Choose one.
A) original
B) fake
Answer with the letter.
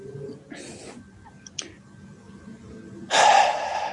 A